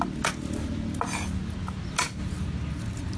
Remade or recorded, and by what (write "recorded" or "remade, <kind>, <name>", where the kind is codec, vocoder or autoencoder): recorded